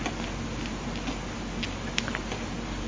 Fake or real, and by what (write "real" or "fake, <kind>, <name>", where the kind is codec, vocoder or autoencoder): real